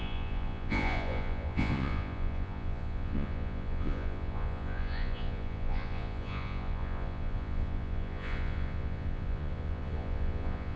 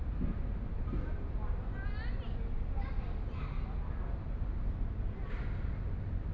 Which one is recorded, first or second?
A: second